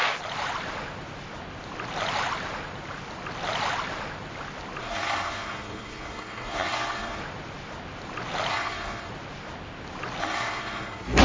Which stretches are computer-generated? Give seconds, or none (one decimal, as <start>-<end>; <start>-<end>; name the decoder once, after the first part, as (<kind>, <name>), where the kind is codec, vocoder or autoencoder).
4.8-7.2 (codec, SNAC); 8.5-9.1; 10.2-11.2